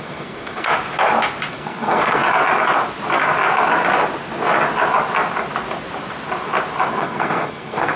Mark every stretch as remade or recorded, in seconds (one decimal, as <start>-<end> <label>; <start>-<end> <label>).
0.0-0.7 remade; 0.7-1.5 recorded; 1.5-2.2 remade; 2.2-6.9 recorded; 6.9-8.0 remade